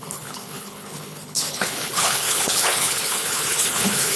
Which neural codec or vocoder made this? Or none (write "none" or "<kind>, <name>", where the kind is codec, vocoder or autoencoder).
codec, HILCodec